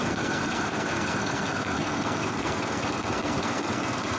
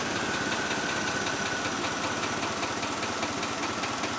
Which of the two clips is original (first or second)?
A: second